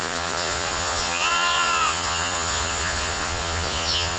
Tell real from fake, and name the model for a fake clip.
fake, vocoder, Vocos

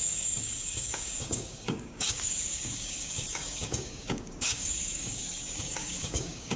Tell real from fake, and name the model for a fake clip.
fake, codec, DAC